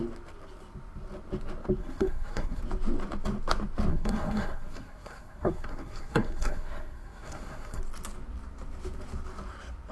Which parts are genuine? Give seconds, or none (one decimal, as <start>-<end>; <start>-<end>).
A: 0.0-1.8; 2.6-3.9; 7.8-9.9